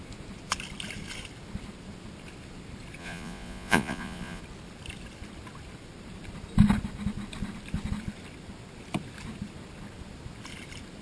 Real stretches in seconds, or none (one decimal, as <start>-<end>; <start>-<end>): 0.0-3.0; 4.4-11.0